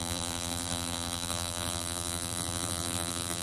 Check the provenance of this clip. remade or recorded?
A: remade